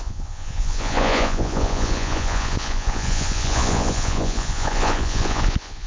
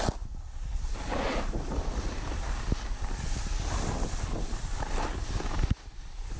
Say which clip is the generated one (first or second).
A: first